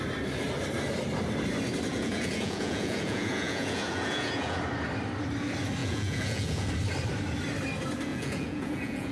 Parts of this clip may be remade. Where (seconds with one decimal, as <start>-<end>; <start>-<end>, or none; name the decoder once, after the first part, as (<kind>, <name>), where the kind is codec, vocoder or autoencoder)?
1.9-4.6 (vocoder, Vocos); 5.8-6.7; 8.1-9.1